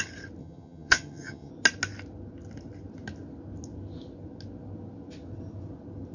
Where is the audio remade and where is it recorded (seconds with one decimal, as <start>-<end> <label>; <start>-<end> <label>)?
0.0-0.4 recorded; 0.4-1.5 remade; 1.5-6.1 recorded